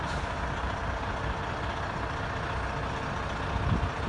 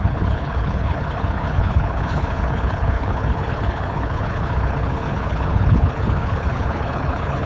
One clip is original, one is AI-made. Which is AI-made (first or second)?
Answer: second